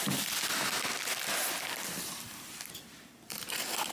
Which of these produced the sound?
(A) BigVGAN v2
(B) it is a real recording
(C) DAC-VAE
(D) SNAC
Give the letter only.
B